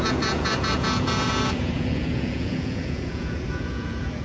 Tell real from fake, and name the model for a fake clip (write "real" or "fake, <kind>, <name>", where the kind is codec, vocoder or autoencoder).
fake, vocoder, Vocos